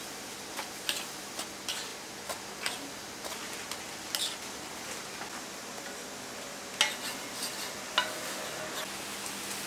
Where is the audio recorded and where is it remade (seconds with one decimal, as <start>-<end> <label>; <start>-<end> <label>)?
0.0-9.7 recorded